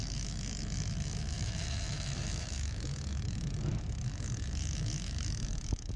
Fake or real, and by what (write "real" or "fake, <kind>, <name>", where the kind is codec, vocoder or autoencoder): fake, autoencoder, DAC-VAE